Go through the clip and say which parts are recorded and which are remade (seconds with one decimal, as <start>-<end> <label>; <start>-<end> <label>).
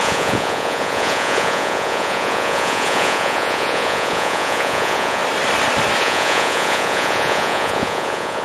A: 0.0-5.2 remade; 5.2-6.0 recorded; 6.0-8.4 remade